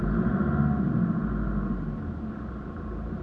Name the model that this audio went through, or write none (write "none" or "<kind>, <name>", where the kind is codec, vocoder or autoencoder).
none